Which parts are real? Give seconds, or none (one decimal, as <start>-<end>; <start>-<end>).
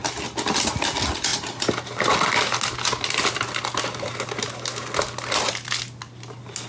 0.0-6.7